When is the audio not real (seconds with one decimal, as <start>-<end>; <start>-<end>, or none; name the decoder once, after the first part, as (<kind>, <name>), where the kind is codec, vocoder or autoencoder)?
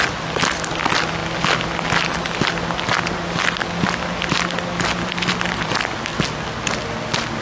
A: none